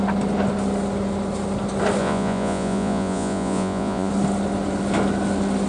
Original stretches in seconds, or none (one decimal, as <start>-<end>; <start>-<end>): 0.0-2.0; 4.1-5.7